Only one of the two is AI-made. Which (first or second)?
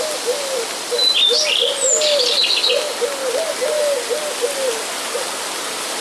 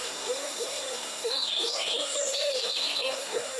second